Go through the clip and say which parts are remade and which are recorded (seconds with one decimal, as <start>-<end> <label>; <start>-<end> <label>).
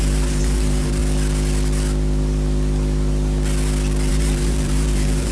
0.0-1.0 remade; 1.0-4.1 recorded; 4.1-5.3 remade